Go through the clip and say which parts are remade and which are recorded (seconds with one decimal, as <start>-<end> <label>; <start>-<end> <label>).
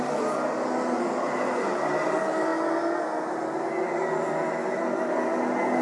0.0-5.8 recorded